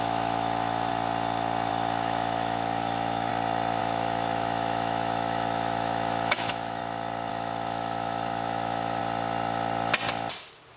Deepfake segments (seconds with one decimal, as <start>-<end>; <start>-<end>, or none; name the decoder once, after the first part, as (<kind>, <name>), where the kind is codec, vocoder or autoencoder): 0.0-0.9 (autoencoder, DAC-VAE); 1.7-3.3; 3.8-6.8; 7.3-9.0